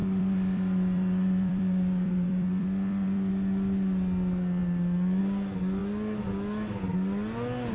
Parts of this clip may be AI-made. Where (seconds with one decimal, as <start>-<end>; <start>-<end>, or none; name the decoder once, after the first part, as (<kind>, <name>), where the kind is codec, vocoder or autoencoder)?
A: 0.0-3.3 (vocoder, BigVGAN v2)